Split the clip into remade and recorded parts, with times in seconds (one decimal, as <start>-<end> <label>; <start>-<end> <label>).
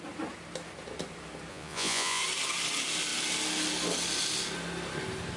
0.0-1.5 recorded; 1.5-2.2 remade; 2.2-5.4 recorded